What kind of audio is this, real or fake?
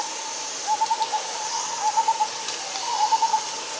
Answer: real